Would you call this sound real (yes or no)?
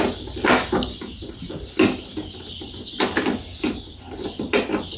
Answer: yes